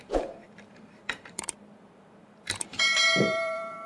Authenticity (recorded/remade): remade